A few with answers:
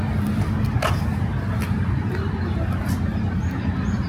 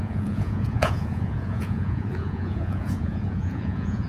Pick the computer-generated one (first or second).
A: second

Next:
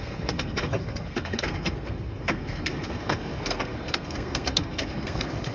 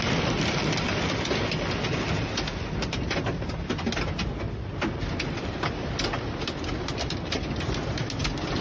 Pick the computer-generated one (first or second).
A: first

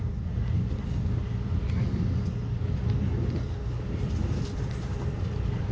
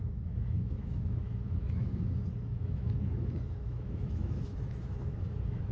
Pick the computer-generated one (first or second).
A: second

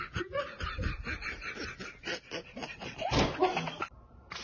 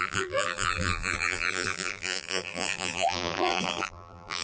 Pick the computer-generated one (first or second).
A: second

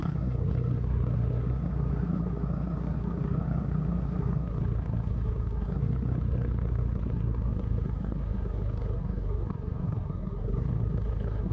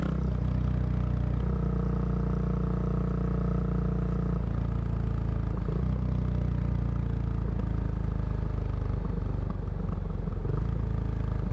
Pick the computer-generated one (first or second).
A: first